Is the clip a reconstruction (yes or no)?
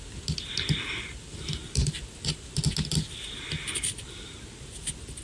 no